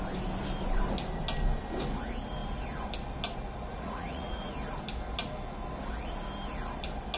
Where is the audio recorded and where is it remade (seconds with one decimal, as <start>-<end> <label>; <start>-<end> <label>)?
0.0-3.7 recorded; 3.7-4.5 remade; 4.5-7.2 recorded